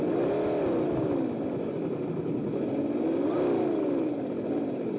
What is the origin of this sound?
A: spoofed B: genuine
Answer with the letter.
B